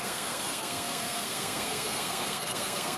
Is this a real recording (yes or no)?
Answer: no